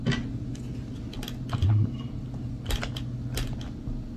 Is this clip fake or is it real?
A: real